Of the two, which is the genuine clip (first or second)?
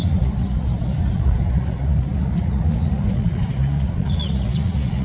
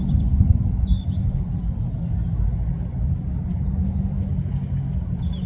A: second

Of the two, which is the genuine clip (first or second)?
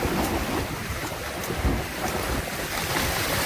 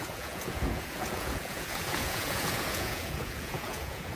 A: first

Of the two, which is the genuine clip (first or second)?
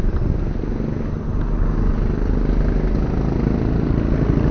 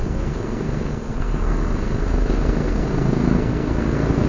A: first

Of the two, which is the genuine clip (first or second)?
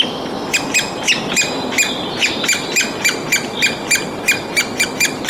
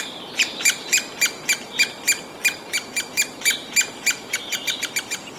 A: first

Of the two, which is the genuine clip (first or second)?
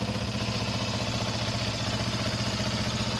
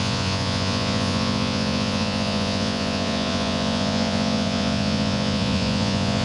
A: first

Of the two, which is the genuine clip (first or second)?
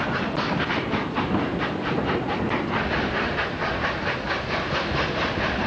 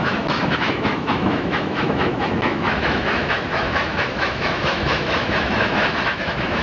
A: first